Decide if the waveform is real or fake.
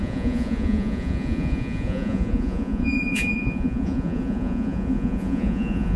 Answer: fake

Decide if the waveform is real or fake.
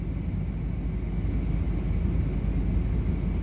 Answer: real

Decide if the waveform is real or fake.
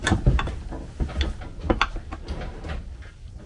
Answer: real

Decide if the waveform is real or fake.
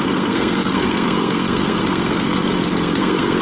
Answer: fake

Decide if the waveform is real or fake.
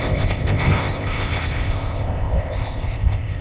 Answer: fake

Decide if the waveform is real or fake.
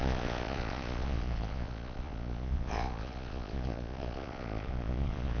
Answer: fake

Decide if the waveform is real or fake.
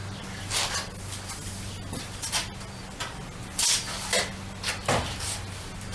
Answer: real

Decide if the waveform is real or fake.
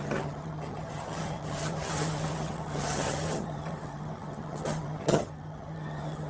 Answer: fake